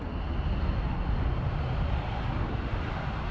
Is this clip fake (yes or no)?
no